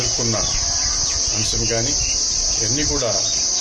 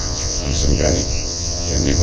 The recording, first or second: first